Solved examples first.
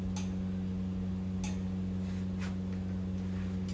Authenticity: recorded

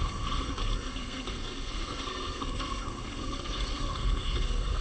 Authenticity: remade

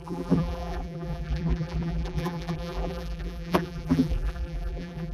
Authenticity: remade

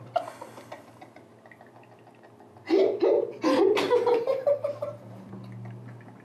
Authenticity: recorded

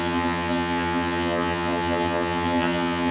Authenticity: remade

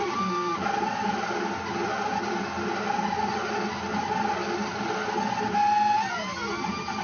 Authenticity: recorded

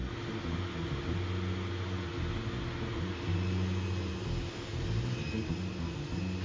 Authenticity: recorded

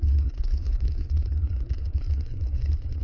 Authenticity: remade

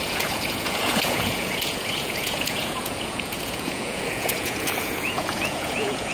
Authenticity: remade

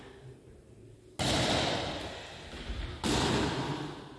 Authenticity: recorded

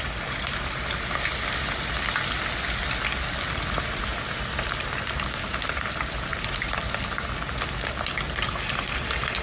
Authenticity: recorded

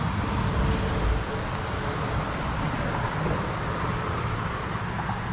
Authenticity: recorded